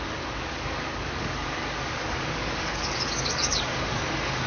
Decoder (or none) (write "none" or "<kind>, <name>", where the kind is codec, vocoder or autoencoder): codec, DAC